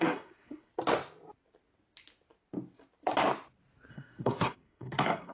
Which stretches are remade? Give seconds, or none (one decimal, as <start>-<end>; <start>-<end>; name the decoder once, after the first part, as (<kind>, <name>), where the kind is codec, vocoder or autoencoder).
0.0-0.7 (codec, SNAC); 3.9-5.3